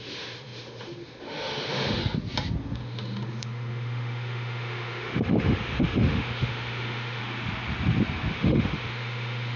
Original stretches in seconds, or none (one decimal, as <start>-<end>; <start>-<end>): 2.0-2.6; 7.2-8.3